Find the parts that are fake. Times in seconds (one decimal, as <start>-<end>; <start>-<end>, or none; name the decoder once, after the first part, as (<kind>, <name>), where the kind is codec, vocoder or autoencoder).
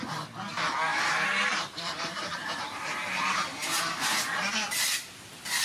0.9-4.3 (vocoder, BigVGAN v2)